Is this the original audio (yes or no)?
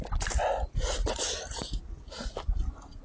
yes